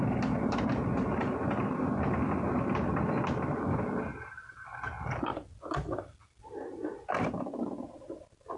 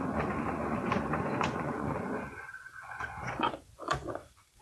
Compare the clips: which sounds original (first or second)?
first